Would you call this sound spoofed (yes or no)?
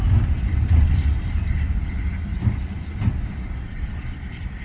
no